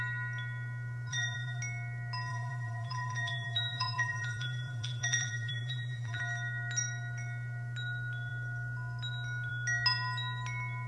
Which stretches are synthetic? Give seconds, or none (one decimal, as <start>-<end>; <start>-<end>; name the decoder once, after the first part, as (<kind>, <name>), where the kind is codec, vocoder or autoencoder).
1.1-1.6 (vocoder, BigVGAN v2); 2.3-6.2